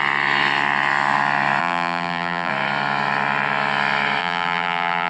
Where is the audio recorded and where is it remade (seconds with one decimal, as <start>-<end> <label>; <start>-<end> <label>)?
0.0-1.6 recorded; 1.6-2.5 remade; 2.5-4.2 recorded; 4.2-5.1 remade